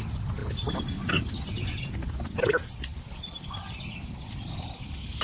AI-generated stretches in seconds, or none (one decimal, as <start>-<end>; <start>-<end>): none